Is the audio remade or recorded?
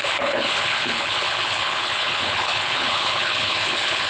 remade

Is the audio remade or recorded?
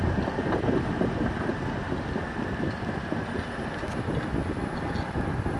recorded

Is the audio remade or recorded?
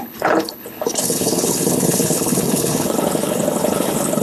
remade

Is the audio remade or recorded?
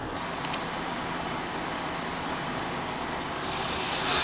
recorded